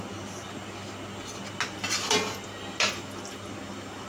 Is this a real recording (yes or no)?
yes